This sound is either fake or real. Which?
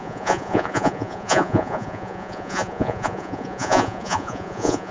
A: fake